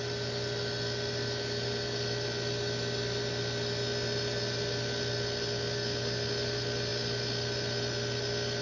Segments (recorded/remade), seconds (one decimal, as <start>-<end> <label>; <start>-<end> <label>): 0.0-8.6 recorded